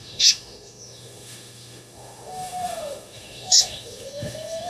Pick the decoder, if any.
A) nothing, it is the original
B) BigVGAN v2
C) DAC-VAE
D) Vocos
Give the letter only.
C